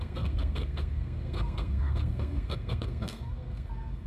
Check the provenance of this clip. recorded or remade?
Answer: remade